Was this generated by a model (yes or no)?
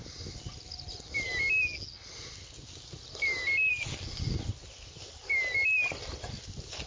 no